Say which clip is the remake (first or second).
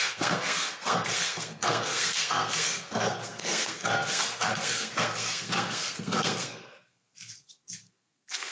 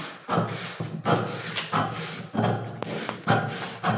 first